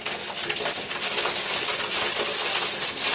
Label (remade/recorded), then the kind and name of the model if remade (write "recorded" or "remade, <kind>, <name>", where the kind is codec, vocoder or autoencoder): recorded